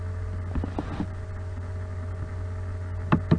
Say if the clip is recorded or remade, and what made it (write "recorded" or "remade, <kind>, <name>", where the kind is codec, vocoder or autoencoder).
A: recorded